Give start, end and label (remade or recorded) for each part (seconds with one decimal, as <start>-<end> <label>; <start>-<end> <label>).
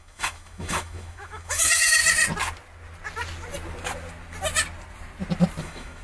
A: 0.0-2.0 remade; 2.0-5.6 recorded; 5.6-6.0 remade